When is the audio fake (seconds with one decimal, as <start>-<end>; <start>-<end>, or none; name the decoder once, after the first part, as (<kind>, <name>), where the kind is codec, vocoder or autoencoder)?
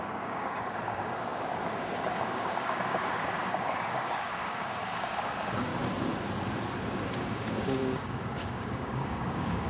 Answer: 0.0-5.7 (codec, DAC); 7.1-9.7